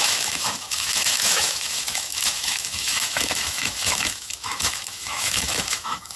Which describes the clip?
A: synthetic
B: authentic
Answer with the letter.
A